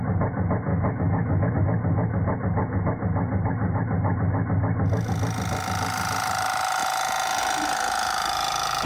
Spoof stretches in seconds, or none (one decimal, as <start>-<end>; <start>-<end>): 0.7-1.5